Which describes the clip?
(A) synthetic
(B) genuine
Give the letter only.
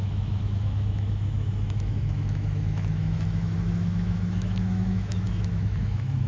A